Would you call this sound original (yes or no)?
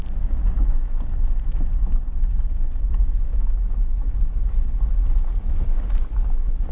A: yes